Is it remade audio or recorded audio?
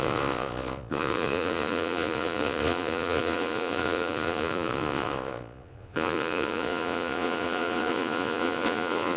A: remade